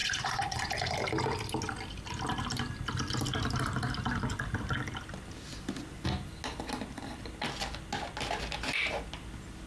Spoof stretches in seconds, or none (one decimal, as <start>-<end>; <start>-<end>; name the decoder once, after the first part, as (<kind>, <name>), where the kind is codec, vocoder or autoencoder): 0.0-0.7 (vocoder, Vocos)